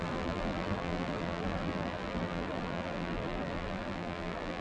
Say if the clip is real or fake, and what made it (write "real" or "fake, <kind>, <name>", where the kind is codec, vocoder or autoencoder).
fake, vocoder, BigVGAN v2